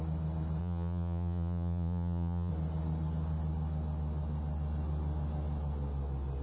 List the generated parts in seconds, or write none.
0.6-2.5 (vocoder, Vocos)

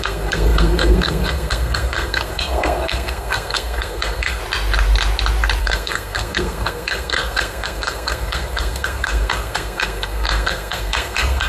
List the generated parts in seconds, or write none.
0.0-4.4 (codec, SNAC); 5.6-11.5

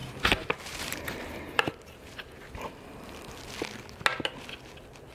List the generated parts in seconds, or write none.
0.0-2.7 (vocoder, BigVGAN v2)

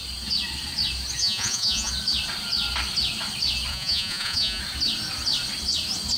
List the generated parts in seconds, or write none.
1.2-1.9 (vocoder, Vocos); 3.7-4.6